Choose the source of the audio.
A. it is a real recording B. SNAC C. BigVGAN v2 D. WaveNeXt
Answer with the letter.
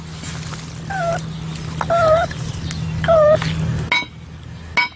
A